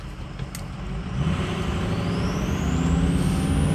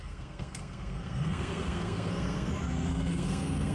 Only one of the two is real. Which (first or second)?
first